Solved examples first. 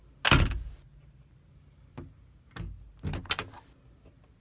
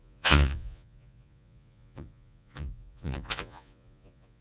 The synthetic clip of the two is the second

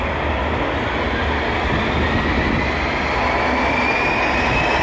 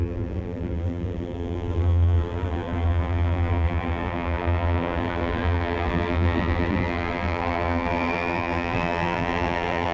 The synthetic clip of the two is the second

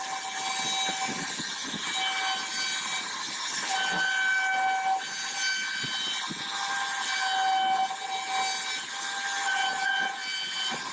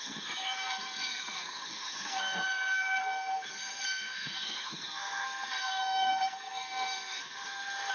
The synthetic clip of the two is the second